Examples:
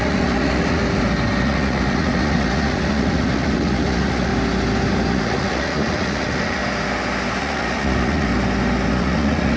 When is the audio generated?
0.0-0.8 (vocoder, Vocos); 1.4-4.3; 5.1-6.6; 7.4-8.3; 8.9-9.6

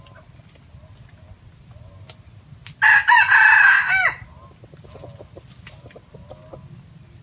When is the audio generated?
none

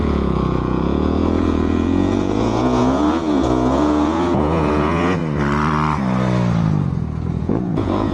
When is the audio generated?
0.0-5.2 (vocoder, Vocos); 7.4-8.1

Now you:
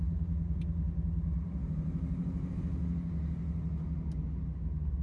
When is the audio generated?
none

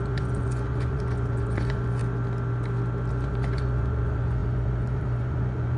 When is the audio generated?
0.0-2.0 (vocoder, Vocos); 3.1-5.8

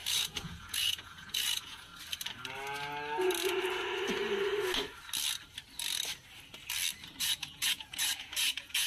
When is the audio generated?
0.0-1.9 (vocoder, Vocos); 7.2-8.9

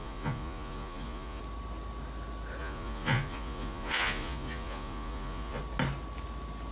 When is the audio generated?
0.0-1.4 (vocoder, Vocos); 2.6-5.6